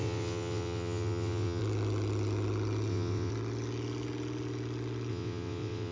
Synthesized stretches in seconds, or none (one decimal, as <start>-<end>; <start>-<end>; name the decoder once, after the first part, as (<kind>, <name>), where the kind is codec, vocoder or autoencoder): 0.0-1.6 (vocoder, WaveNeXt); 2.9-3.3; 5.1-5.9